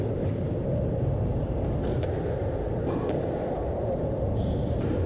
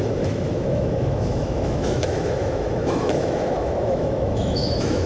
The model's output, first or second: second